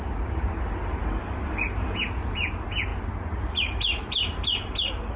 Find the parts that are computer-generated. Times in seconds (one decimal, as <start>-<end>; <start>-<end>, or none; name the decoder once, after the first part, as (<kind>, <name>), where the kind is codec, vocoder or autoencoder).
none